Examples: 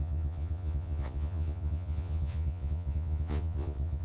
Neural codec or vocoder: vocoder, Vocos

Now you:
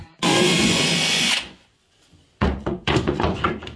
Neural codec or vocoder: vocoder, Vocos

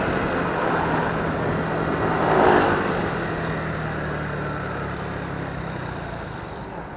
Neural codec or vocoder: none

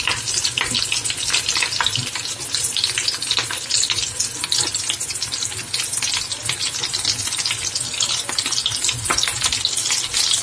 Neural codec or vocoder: none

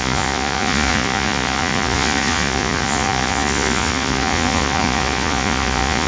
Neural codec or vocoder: vocoder, Vocos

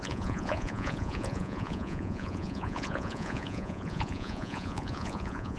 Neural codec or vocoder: vocoder, Vocos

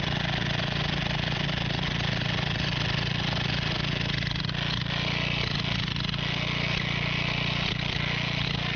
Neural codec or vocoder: none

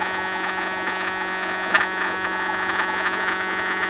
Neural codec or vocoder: vocoder, Vocos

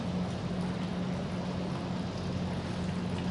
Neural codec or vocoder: none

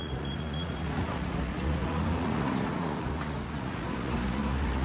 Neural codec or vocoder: vocoder, Vocos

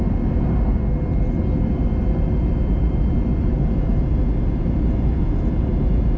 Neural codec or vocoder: none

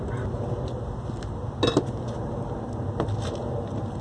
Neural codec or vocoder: none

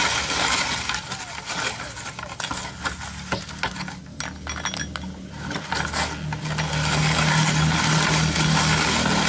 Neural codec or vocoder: none